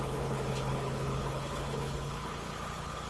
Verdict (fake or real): fake